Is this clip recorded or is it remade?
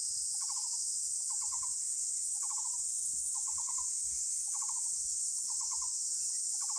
remade